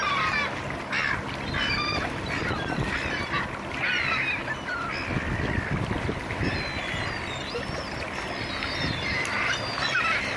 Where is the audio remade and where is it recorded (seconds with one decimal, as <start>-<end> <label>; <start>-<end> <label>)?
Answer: 0.0-10.4 recorded